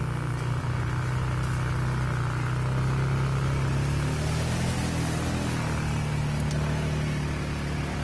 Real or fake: real